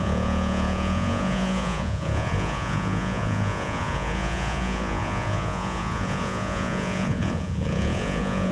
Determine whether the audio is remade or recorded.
remade